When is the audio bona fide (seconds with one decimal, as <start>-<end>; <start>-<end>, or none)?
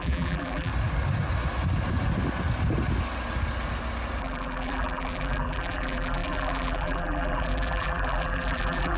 0.7-4.2